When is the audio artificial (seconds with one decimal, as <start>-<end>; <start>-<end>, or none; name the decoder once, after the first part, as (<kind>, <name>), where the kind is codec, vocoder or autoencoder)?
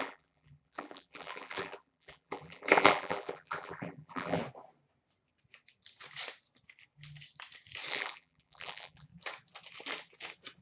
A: 0.0-4.4 (vocoder, BigVGAN v2); 7.9-9.1